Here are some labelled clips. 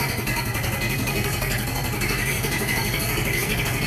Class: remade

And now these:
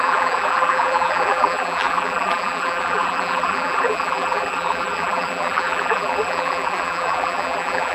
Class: remade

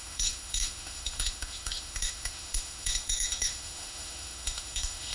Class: remade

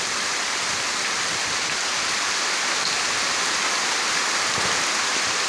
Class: remade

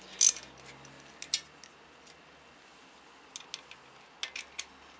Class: recorded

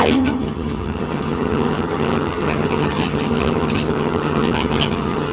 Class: remade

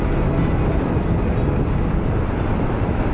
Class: recorded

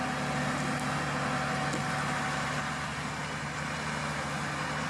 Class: recorded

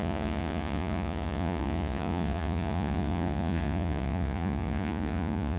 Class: remade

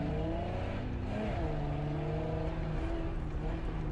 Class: recorded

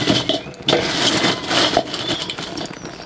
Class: recorded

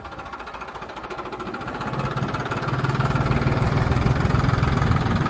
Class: recorded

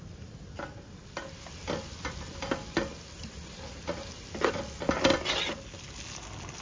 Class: recorded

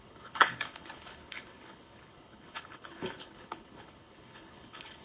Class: remade